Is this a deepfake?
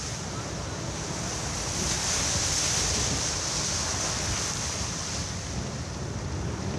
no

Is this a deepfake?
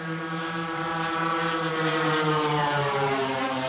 yes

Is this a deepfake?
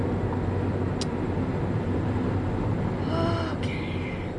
no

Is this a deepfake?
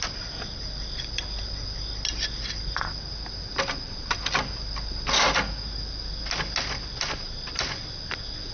no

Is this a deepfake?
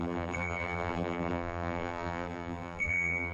yes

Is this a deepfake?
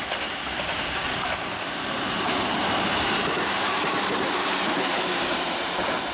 yes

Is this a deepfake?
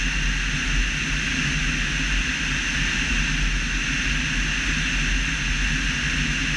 no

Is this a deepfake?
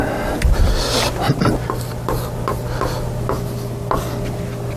no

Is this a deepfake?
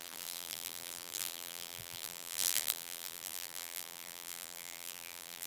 yes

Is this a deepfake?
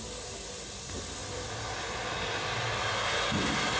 no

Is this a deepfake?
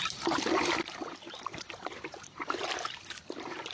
yes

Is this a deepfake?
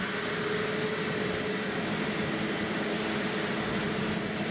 no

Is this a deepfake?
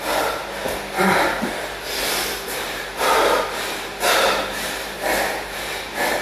yes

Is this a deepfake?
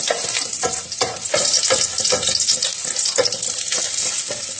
no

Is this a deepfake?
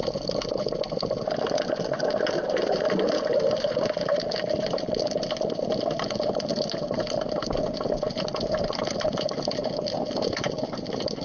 no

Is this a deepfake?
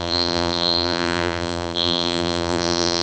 yes